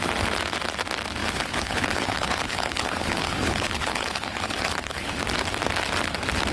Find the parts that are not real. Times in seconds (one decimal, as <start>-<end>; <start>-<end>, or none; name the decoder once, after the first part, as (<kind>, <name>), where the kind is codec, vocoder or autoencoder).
1.2-5.1 (codec, HILCodec)